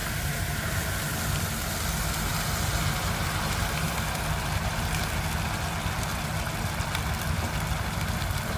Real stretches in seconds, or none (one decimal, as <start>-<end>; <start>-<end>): 0.0-8.6